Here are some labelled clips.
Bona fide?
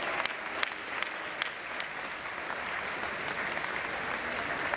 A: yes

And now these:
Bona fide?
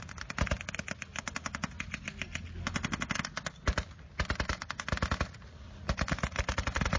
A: yes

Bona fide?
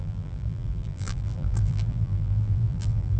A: no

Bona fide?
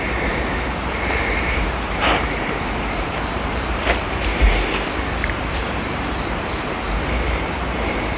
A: no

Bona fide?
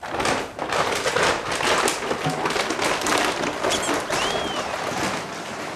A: yes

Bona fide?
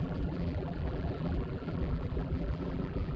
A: no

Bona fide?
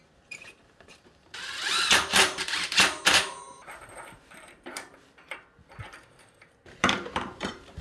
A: no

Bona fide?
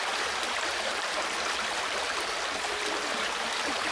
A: no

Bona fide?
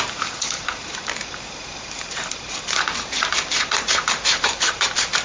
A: no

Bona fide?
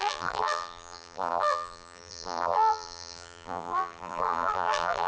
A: no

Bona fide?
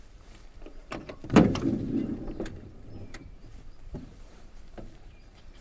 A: no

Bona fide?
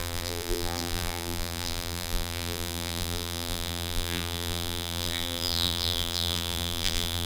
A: no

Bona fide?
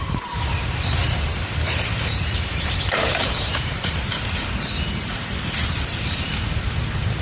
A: no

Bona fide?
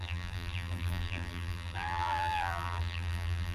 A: no